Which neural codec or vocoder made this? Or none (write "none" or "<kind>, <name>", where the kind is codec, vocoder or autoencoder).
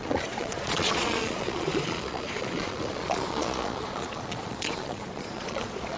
vocoder, Vocos